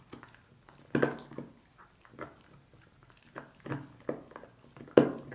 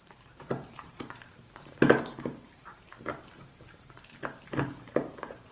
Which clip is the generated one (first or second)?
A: second